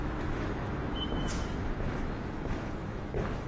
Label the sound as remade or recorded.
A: remade